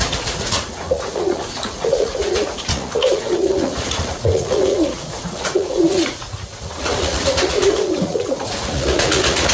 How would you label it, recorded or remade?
remade